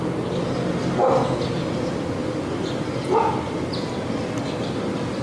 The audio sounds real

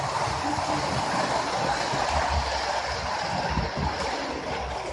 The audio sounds real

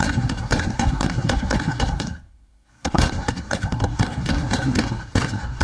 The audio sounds fake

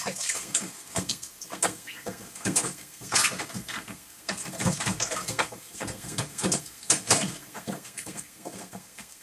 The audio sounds fake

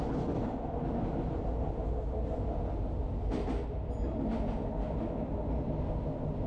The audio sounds real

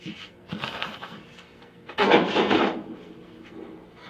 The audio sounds fake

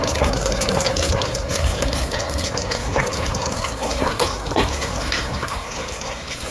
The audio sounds fake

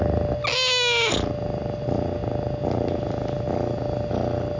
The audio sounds real